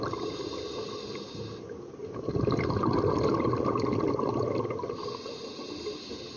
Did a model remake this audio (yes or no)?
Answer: no